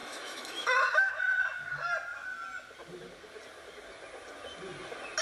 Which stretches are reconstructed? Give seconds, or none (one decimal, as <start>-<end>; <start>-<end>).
0.0-1.1